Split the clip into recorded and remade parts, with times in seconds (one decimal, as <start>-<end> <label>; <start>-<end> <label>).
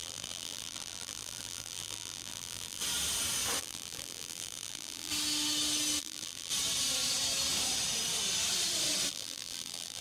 0.0-2.8 remade; 2.8-3.6 recorded; 3.6-5.1 remade; 5.1-6.0 recorded; 6.0-6.5 remade; 6.5-9.1 recorded; 9.1-10.0 remade